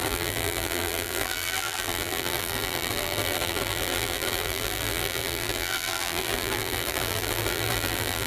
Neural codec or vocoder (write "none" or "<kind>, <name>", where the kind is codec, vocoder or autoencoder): vocoder, BigVGAN v2